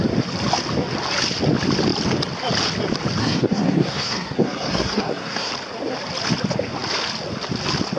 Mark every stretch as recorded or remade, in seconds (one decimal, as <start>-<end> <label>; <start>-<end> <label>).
0.0-3.2 recorded; 3.2-5.5 remade; 5.5-8.0 recorded